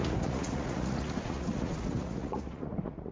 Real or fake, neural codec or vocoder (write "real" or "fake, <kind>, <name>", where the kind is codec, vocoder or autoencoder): fake, vocoder, Vocos